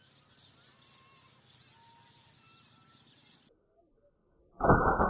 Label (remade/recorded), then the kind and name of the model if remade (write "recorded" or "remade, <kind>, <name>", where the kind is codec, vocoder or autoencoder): recorded